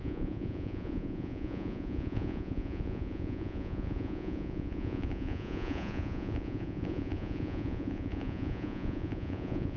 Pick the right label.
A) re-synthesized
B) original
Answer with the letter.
A